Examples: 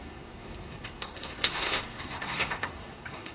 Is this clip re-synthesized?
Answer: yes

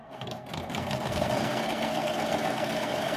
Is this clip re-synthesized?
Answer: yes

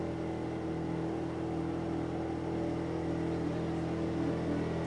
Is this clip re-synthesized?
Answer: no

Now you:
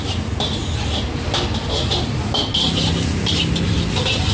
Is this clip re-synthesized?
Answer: no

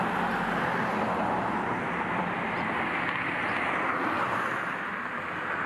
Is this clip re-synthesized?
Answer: no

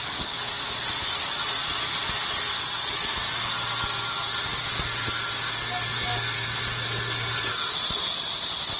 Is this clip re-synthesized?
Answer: no